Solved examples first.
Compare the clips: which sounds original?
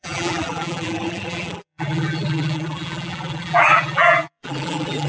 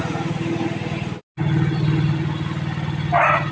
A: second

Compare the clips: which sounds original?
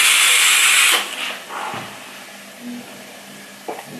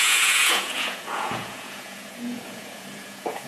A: first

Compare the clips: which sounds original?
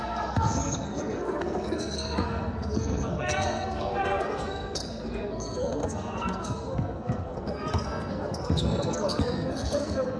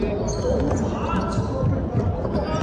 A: second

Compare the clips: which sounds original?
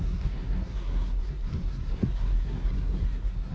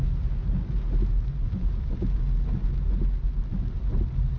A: second